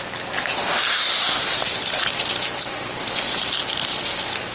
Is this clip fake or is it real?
real